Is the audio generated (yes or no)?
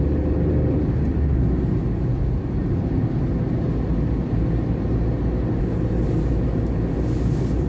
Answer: no